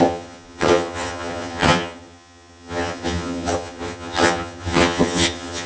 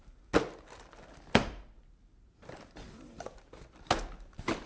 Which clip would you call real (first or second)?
second